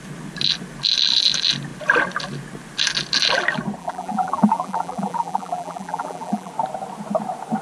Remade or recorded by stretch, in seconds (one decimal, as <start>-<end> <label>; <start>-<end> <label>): 0.0-3.8 recorded; 3.8-6.5 remade; 6.5-7.6 recorded